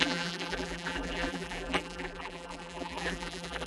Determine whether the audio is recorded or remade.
remade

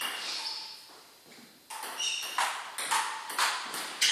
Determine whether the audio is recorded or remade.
recorded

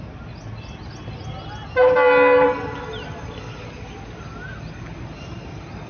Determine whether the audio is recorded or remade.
recorded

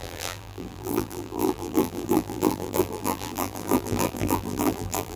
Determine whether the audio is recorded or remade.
remade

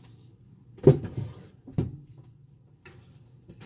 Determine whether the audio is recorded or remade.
remade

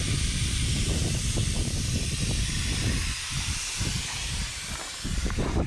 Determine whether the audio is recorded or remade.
remade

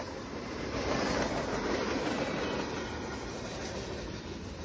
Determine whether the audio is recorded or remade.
recorded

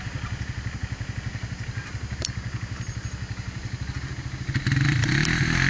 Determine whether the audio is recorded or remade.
recorded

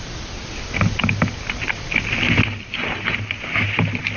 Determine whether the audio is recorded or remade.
recorded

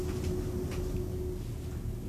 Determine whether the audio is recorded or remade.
recorded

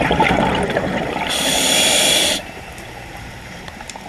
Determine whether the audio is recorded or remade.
remade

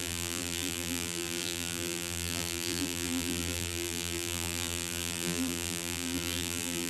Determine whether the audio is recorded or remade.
remade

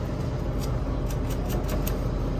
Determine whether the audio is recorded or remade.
recorded